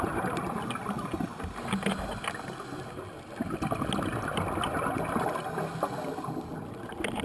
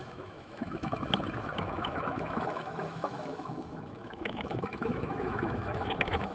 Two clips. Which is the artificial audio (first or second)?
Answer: second